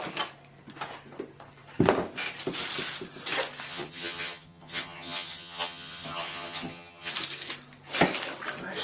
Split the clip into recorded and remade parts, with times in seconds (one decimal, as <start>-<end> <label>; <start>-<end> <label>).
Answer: 0.0-3.7 recorded; 3.7-7.1 remade; 7.1-8.8 recorded